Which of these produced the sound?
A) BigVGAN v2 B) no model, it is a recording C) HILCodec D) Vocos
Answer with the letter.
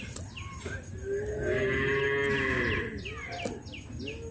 B